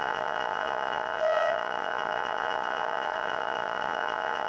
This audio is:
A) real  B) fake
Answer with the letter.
B